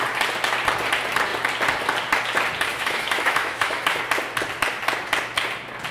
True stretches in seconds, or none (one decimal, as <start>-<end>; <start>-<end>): 0.0-2.7; 4.0-5.9